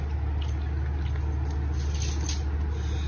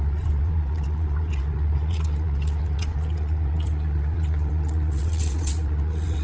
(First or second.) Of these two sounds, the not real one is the second